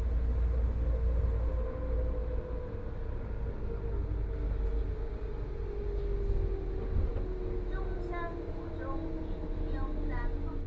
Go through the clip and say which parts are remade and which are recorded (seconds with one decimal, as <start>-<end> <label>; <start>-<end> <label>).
0.0-10.7 recorded